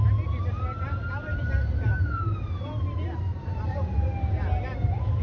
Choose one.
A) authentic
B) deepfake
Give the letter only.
B